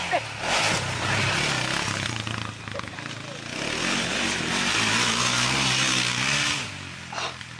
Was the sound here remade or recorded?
recorded